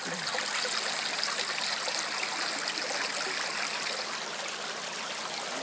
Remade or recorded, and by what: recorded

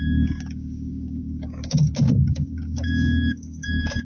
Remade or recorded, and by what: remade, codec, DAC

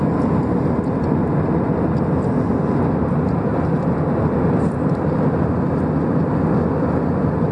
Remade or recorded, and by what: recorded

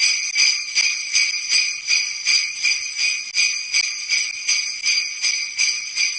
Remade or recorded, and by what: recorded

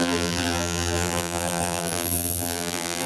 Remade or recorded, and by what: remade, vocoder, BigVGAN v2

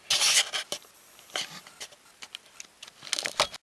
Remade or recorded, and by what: recorded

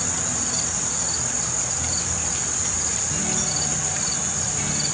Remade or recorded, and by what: recorded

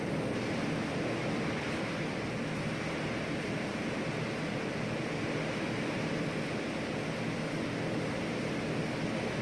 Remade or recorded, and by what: recorded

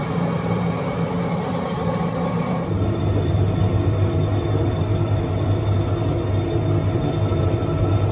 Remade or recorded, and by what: recorded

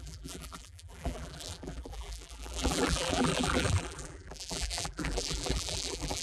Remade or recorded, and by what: remade, vocoder, BigVGAN v2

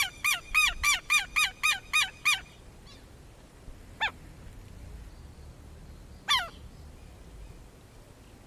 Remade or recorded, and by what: recorded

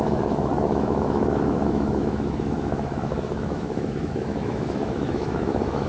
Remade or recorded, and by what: remade, autoencoder, DAC-VAE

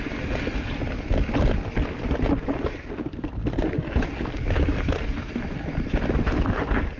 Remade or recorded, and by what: recorded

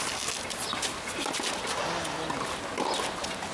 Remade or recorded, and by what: recorded